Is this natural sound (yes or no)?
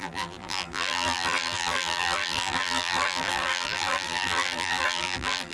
no